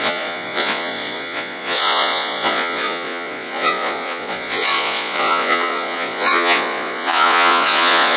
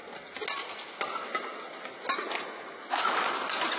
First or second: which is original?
second